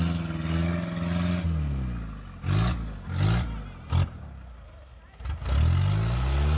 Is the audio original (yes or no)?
yes